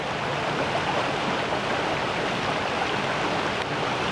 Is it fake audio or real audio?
real